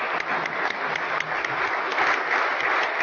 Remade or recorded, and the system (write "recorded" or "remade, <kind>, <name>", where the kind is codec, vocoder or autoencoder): recorded